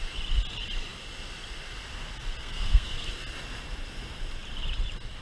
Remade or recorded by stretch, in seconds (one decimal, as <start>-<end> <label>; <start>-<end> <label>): 0.0-2.4 recorded; 2.4-3.1 remade; 3.1-5.2 recorded